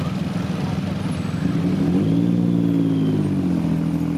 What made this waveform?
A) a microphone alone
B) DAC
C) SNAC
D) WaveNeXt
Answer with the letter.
A